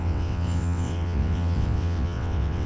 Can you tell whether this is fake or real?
fake